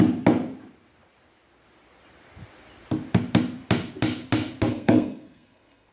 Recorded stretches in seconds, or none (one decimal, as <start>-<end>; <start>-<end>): 0.0-4.7